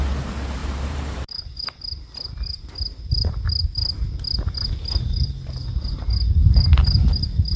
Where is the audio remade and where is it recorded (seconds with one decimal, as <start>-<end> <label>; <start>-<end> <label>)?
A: 0.0-0.6 recorded; 0.6-1.8 remade; 1.8-6.4 recorded; 6.4-7.1 remade; 7.1-7.6 recorded

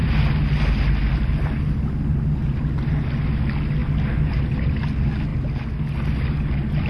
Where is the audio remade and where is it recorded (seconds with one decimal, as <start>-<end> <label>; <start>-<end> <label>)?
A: 0.0-6.9 recorded

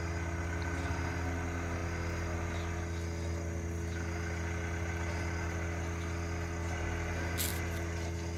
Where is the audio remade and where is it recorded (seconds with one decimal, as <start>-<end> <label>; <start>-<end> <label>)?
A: 0.0-8.4 recorded

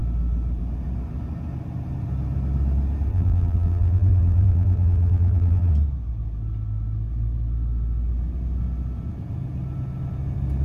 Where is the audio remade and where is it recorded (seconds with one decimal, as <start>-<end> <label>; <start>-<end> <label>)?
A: 0.0-3.1 recorded; 3.1-5.7 remade; 5.7-10.6 recorded

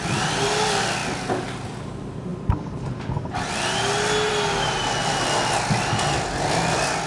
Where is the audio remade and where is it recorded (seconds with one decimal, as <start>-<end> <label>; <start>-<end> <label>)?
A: 0.0-7.1 recorded

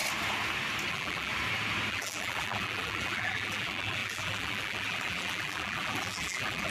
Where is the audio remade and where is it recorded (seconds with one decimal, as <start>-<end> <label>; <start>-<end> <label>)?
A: 0.0-0.9 recorded; 0.9-1.3 remade; 1.3-1.9 recorded; 1.9-6.7 remade

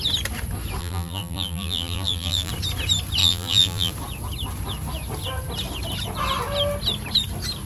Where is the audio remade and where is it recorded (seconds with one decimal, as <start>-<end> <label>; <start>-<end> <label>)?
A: 0.0-0.8 recorded; 0.8-2.5 remade; 2.5-3.2 recorded; 3.2-3.9 remade; 3.9-7.7 recorded